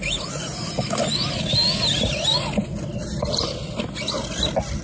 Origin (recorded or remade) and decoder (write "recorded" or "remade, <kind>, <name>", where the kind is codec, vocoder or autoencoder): recorded